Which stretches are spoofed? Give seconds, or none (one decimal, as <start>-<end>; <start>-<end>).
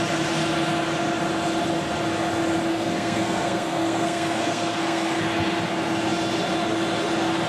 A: 2.7-5.2